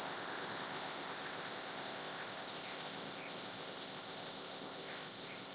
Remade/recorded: remade